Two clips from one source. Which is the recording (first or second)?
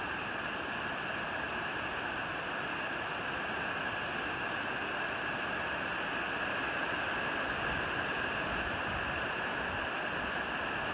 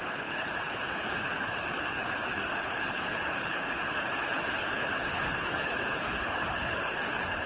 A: first